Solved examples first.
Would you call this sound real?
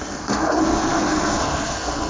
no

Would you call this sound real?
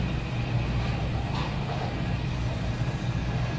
yes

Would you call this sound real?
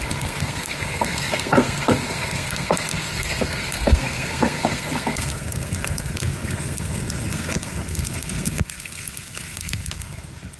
no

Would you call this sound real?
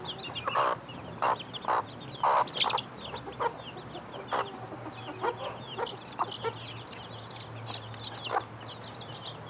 yes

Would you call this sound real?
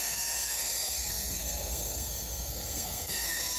no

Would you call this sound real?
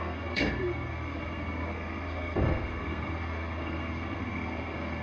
no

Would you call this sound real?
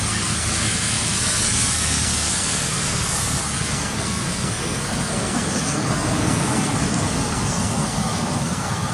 no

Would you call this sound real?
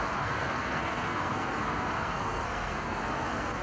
no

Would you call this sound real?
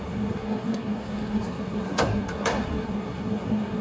no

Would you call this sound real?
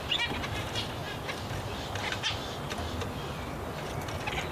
yes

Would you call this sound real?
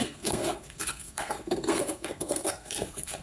no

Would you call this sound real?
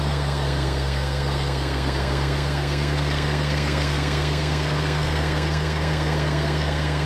no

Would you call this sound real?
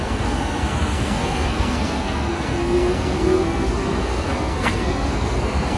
no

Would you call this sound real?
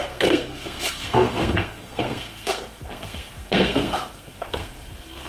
no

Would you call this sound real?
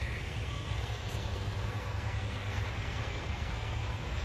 no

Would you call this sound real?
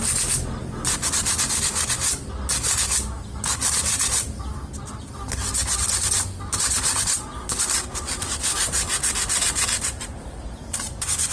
yes